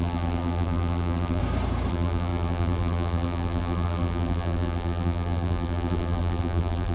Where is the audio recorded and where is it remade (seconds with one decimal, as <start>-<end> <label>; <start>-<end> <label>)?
0.0-1.4 remade; 1.4-1.9 recorded; 1.9-6.9 remade